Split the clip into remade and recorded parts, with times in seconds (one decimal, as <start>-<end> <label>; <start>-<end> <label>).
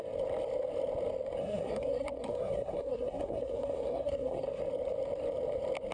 0.0-1.4 recorded; 1.4-4.6 remade; 4.6-5.9 recorded